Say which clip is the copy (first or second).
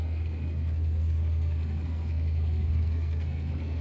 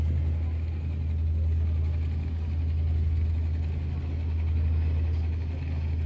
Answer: first